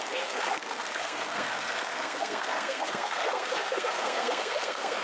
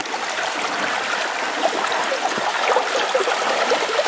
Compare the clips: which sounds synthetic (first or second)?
first